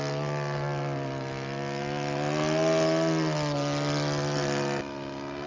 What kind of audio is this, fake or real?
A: real